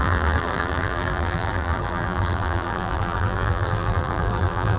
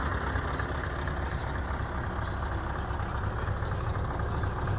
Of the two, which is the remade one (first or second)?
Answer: first